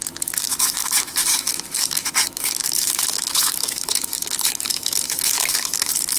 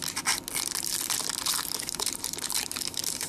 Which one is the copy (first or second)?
first